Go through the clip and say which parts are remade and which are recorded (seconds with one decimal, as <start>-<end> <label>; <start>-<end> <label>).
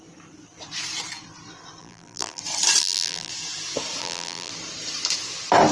0.0-1.8 recorded; 1.8-2.4 remade; 2.4-2.8 recorded; 2.8-3.3 remade; 3.3-4.0 recorded; 4.0-4.5 remade; 4.5-5.7 recorded